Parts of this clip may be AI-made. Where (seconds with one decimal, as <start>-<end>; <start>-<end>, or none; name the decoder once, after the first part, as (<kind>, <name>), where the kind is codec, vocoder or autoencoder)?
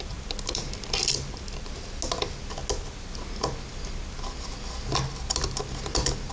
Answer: none